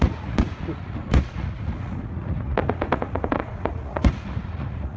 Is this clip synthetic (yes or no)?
yes